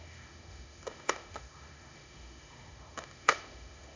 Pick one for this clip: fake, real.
fake